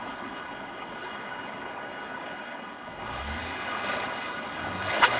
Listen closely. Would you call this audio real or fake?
fake